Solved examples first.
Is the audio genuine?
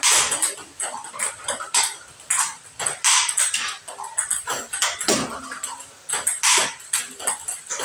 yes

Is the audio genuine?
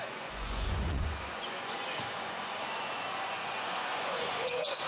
no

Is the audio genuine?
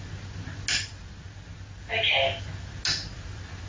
yes